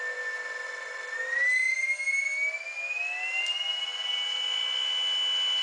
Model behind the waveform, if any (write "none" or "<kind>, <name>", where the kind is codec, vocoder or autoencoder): none